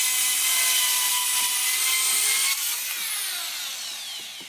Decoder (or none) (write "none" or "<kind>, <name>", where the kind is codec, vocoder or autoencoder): none